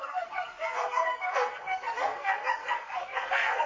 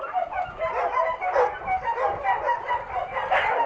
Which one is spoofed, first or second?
first